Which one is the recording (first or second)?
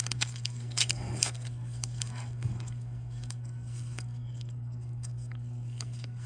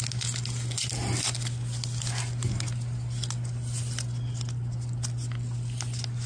second